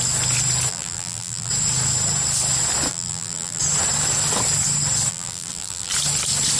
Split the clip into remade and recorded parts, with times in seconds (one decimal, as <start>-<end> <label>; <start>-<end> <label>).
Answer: 0.0-0.7 recorded; 0.7-1.5 remade; 1.5-2.9 recorded; 2.9-3.6 remade; 3.6-5.1 recorded; 5.1-5.9 remade; 5.9-6.6 recorded